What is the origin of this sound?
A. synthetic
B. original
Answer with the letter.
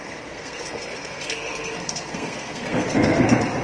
A